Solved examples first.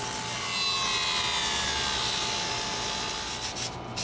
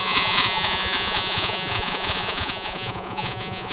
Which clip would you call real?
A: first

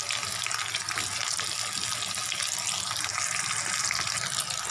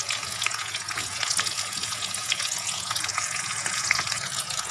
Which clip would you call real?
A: first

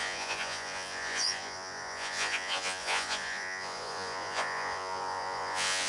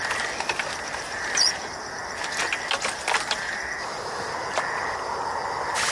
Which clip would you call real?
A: second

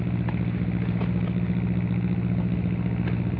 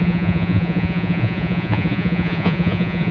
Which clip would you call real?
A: first